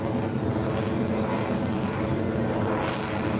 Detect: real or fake real